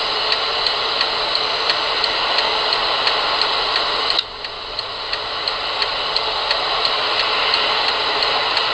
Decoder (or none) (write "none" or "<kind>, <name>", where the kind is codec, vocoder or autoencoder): none